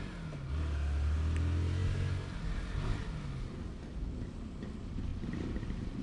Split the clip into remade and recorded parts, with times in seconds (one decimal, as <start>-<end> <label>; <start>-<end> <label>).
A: 0.0-5.1 recorded; 5.1-6.0 remade